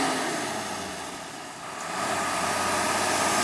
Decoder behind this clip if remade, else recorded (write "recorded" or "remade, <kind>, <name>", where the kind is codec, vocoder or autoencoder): recorded